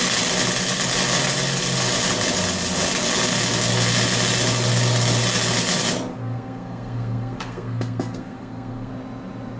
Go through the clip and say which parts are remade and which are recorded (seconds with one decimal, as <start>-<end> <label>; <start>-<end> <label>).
0.0-6.1 recorded; 6.1-8.9 remade; 8.9-9.6 recorded